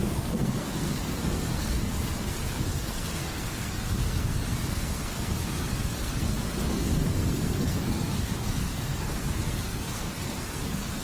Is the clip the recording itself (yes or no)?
no